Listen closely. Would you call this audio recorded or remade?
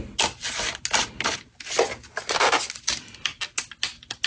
recorded